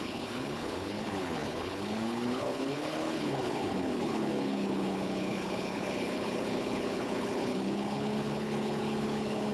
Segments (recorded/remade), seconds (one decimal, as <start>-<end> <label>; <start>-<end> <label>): 0.0-9.5 remade